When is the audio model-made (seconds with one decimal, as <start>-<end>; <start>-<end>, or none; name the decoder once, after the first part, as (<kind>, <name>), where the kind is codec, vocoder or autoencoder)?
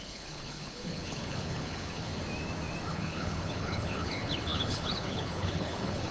0.0-2.1 (codec, HILCodec); 2.9-6.1